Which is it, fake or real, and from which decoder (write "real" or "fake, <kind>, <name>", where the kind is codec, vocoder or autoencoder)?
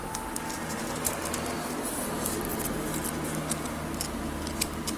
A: real